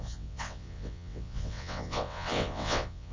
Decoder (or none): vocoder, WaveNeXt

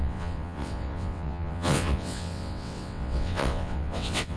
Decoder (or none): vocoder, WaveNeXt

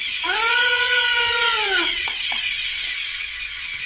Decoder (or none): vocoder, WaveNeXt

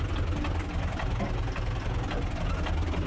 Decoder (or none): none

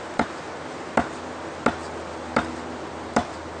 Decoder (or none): none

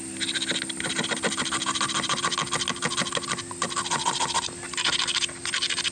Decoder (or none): none